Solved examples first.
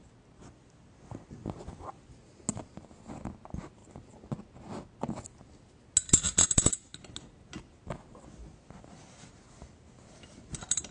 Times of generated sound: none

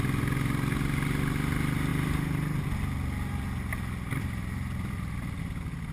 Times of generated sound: none

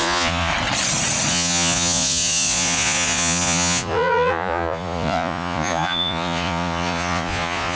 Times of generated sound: 0.0-0.5 (vocoder, Vocos); 1.3-7.7

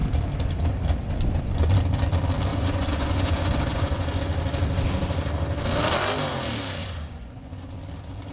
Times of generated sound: 2.5-4.2 (vocoder, Vocos); 6.8-7.7

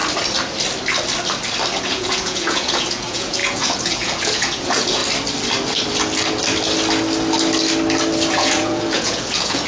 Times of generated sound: 1.8-5.0 (vocoder, Vocos); 8.3-9.7